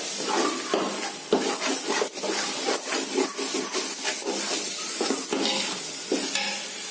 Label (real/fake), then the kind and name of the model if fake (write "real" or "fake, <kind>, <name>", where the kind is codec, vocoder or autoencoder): real